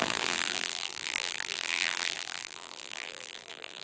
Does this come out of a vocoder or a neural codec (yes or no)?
yes